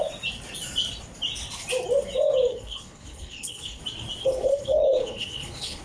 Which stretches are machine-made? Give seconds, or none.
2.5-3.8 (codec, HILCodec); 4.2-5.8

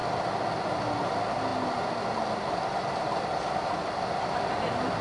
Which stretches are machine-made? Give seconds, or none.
none

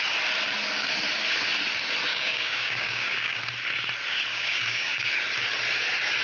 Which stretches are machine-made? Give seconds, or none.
2.1-3.4 (codec, DAC); 4.3-5.1

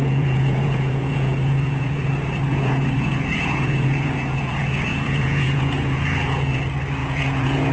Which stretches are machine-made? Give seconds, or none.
0.0-2.1 (vocoder, Vocos); 2.5-6.6; 7.0-7.7

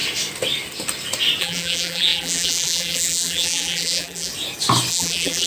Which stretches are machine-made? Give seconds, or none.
1.4-4.3 (vocoder, BigVGAN v2); 4.9-5.5

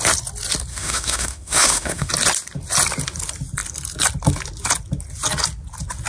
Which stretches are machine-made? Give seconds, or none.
0.7-2.1 (autoencoder, DAC-VAE)

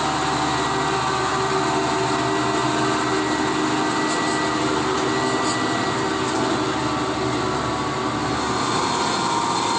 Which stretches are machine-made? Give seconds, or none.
none

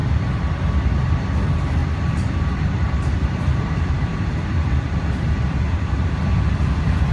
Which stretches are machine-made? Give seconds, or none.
0.0-0.7 (vocoder, BigVGAN v2); 1.8-6.1